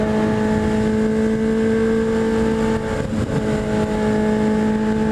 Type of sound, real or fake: real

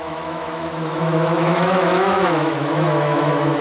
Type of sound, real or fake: fake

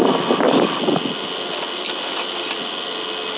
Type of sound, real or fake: real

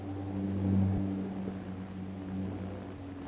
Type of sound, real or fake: real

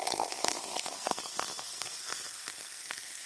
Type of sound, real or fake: fake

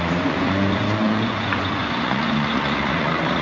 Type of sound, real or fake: fake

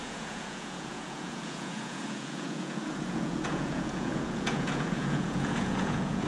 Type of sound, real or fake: fake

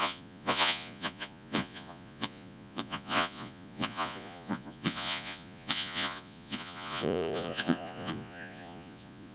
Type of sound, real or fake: fake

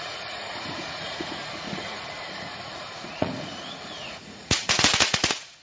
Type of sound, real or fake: fake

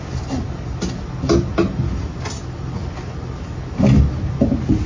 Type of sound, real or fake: real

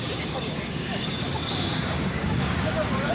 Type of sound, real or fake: fake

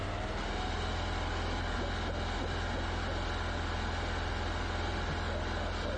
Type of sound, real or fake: real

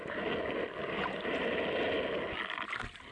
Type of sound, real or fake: real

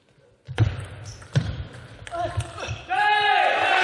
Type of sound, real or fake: real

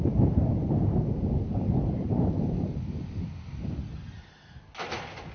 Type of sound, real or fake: real